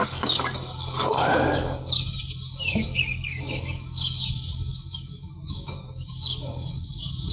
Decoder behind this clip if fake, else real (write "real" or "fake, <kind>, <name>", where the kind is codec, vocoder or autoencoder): fake, codec, DAC